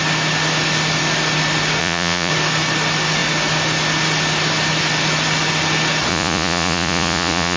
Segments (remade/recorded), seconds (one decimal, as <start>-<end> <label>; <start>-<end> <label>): 0.0-1.8 recorded; 1.8-2.3 remade; 2.3-6.1 recorded; 6.1-7.6 remade